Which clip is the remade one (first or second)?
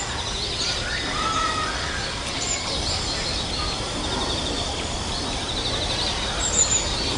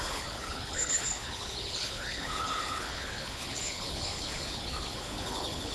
second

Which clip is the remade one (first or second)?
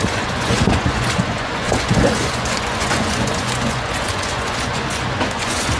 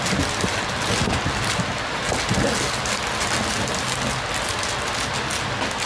first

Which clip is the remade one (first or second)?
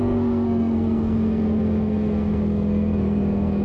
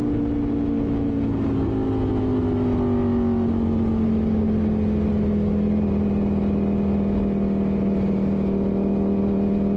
first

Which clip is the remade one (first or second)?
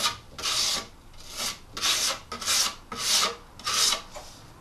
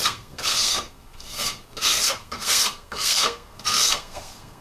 second